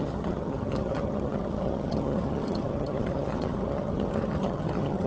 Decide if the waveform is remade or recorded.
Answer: remade